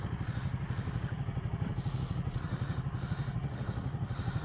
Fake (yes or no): yes